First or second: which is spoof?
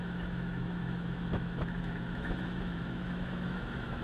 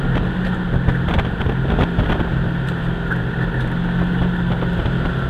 first